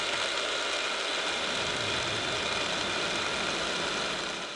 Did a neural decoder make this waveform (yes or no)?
no